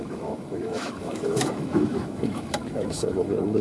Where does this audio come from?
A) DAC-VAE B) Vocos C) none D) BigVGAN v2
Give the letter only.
A